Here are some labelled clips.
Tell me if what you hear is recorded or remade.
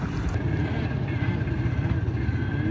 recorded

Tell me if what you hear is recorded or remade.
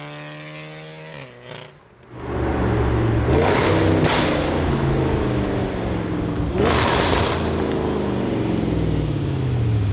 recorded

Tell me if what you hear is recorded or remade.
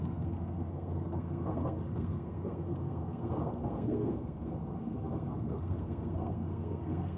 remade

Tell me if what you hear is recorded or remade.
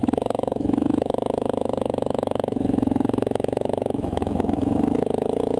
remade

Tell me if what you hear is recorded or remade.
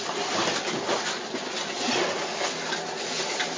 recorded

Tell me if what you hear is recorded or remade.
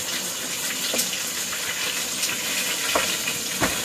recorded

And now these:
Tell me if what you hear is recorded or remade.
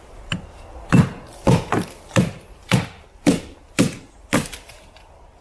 recorded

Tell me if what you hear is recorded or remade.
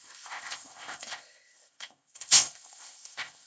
remade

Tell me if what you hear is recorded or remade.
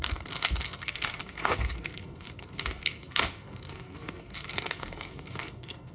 remade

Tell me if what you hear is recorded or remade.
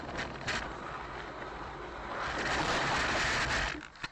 recorded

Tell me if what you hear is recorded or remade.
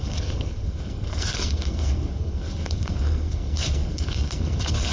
remade